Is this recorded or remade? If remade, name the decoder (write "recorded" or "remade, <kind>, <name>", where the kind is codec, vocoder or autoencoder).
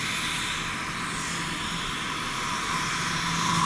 recorded